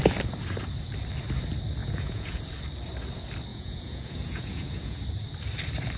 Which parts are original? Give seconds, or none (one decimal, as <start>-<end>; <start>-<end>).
0.0-1.8; 2.4-3.5; 5.0-6.0